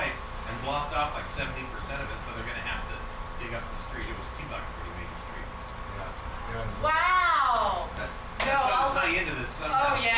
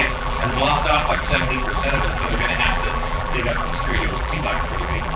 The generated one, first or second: second